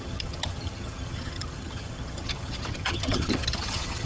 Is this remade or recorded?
remade